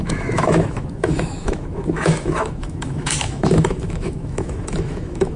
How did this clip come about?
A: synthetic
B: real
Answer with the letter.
A